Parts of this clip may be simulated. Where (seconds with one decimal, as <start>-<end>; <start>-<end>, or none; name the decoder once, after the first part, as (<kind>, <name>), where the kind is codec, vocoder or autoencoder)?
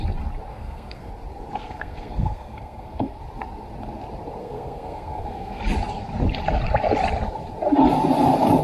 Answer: 0.5-1.1 (codec, SNAC); 1.6-3.2; 4.4-5.6